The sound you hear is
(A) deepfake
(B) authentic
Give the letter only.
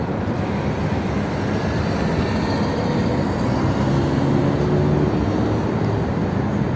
B